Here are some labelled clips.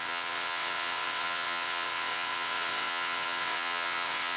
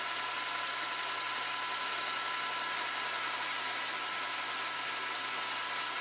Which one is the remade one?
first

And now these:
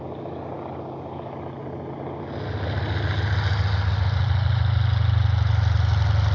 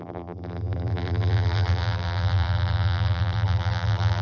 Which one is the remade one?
second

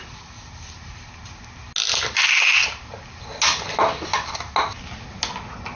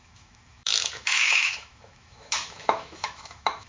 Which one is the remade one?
second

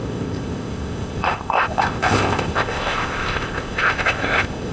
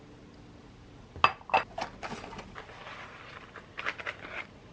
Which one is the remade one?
first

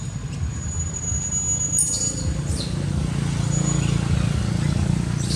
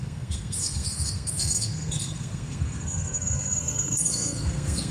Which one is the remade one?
second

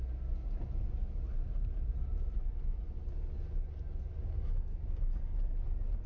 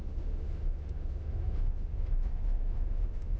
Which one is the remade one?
second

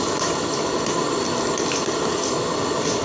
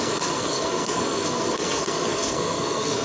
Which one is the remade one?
second